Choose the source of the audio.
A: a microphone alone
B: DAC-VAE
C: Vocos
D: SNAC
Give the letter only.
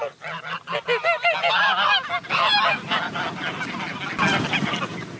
A